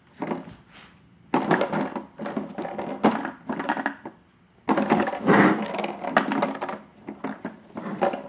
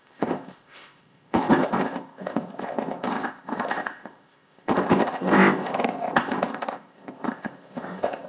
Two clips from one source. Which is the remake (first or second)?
second